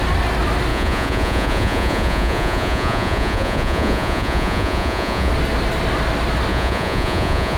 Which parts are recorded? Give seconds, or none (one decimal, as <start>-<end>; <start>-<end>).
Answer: 0.0-0.7; 5.3-6.5